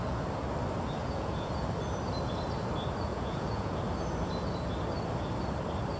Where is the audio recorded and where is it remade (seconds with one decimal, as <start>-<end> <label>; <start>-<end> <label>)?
0.0-1.0 recorded; 1.0-1.5 remade; 1.5-3.1 recorded; 3.1-3.8 remade; 3.8-6.0 recorded